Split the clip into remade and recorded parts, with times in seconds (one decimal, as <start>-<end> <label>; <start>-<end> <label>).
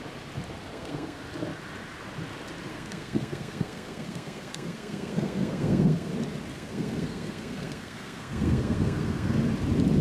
0.0-0.7 recorded; 0.7-1.2 remade; 1.2-2.7 recorded; 2.7-6.1 remade; 6.1-6.5 recorded; 6.5-9.4 remade; 9.4-10.0 recorded